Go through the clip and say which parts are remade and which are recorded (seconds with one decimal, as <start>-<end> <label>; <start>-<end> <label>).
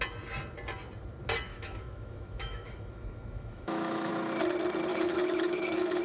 0.0-1.5 recorded; 1.5-4.1 remade; 4.1-4.9 recorded; 4.9-6.0 remade